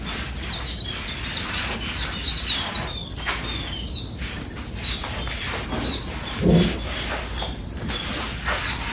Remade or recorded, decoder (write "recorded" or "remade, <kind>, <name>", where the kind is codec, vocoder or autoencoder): recorded